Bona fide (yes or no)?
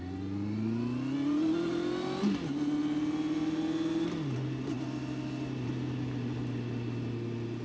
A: yes